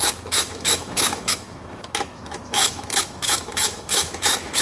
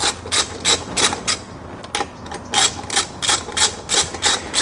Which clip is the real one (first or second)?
second